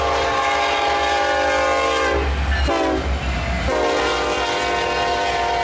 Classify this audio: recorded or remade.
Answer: recorded